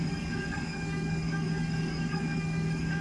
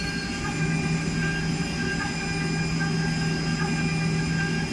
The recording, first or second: second